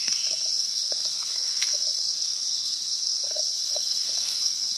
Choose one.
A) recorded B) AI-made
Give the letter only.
B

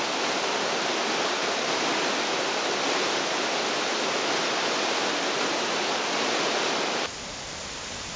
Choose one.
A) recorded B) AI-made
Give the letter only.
A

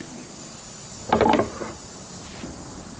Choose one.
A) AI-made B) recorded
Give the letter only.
B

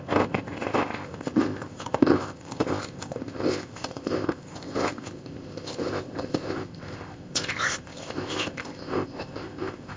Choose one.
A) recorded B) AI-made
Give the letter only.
B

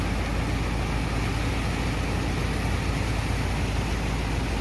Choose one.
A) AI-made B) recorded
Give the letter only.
B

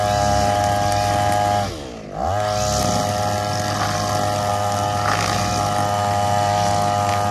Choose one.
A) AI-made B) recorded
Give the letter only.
B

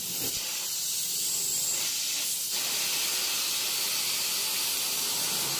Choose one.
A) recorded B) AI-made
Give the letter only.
A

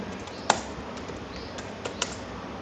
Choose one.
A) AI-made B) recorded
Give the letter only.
B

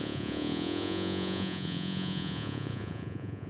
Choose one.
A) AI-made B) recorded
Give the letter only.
A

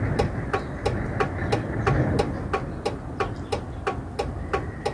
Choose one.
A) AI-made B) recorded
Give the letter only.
B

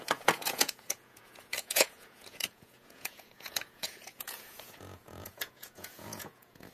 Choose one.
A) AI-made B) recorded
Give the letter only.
A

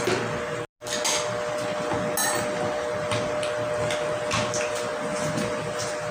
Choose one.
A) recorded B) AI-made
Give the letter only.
A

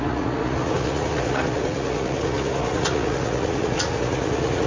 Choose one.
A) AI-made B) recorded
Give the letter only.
A